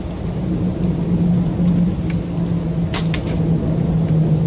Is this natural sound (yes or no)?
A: yes